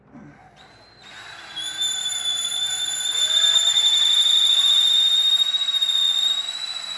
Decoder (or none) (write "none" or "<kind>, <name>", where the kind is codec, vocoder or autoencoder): none